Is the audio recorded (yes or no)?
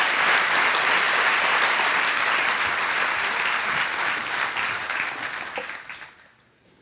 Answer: yes